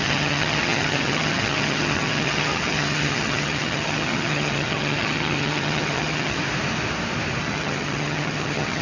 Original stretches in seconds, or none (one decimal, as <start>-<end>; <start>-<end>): 6.4-7.4